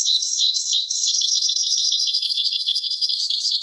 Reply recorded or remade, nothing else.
remade